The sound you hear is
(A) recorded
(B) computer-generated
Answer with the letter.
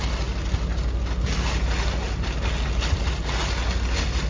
A